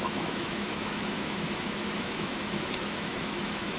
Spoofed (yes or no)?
yes